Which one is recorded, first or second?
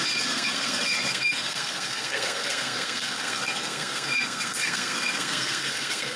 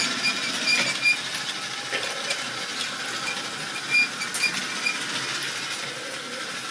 second